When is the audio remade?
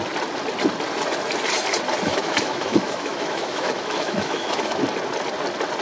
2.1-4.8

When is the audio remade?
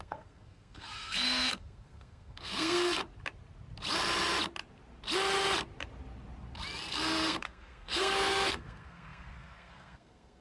0.0-3.0; 6.9-10.4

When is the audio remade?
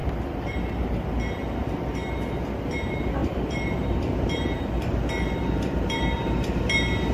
0.0-0.6; 3.2-6.6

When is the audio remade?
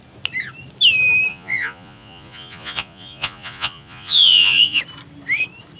1.3-4.8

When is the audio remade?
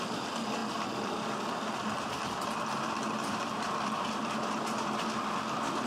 none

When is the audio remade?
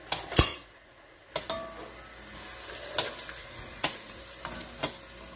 0.5-1.3; 3.4-4.2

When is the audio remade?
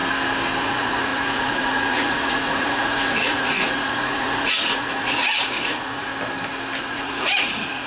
0.6-6.1; 6.8-7.9